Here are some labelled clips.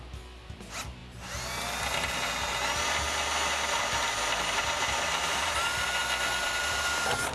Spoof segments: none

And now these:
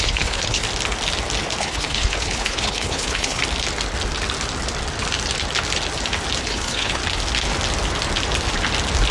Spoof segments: 0.0-0.6 (codec, HILCodec); 1.6-3.4; 6.4-7.0

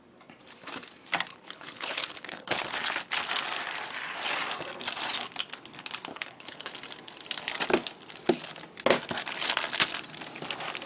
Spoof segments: 1.3-2.6 (codec, HILCodec); 6.1-6.7

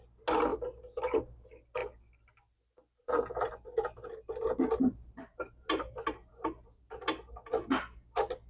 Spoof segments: none